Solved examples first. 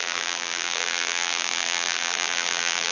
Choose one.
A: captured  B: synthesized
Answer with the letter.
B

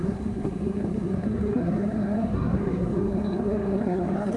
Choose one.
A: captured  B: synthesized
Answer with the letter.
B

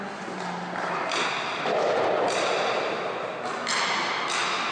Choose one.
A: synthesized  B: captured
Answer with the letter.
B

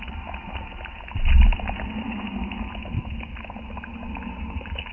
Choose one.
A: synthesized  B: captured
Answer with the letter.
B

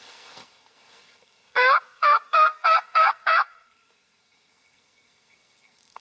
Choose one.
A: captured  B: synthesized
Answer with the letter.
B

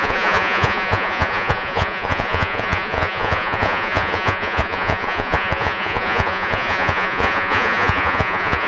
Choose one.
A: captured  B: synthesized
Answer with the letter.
B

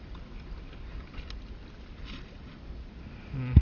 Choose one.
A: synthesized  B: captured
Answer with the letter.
B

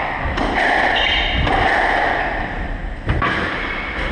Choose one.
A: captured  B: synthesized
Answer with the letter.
A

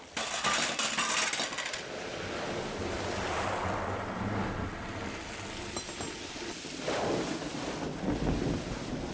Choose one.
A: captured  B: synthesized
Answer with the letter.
A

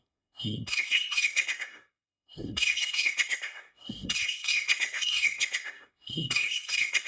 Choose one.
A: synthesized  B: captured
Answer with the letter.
A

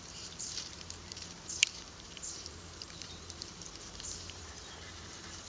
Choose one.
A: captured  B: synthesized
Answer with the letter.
B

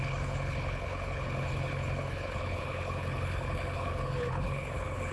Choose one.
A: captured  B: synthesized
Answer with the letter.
B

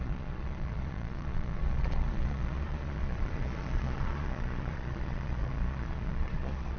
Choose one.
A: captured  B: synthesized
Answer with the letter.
B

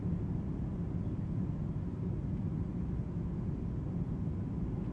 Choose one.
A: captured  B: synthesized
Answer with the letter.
A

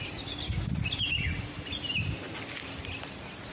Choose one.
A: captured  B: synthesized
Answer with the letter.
A